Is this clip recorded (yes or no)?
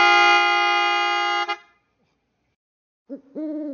yes